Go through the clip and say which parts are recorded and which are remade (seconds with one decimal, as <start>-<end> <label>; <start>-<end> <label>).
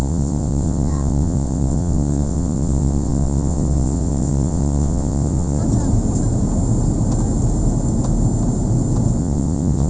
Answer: 0.0-5.6 remade; 5.6-9.2 recorded; 9.2-9.9 remade